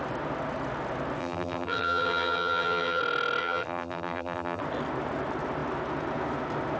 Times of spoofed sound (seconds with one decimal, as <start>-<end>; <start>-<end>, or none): 1.2-3.0; 3.4-4.6